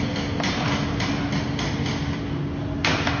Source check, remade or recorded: recorded